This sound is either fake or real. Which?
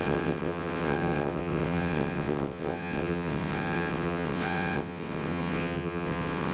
fake